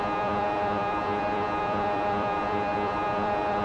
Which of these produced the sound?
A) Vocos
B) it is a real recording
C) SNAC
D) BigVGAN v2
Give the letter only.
D